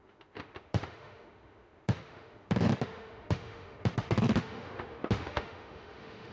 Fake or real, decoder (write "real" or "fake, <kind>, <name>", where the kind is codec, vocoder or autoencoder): fake, autoencoder, DAC-VAE